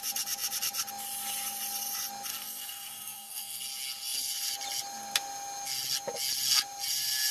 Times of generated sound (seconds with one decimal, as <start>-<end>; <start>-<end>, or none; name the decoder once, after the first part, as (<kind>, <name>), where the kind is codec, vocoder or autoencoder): 2.3-3.6 (codec, SNAC)